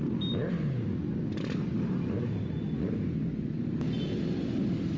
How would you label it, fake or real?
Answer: real